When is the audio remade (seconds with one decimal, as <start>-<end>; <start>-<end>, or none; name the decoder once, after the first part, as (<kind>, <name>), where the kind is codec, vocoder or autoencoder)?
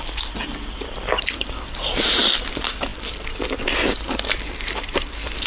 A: 0.0-5.5 (vocoder, BigVGAN v2)